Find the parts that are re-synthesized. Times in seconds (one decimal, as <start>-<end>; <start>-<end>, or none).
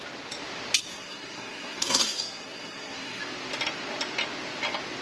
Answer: 0.9-3.2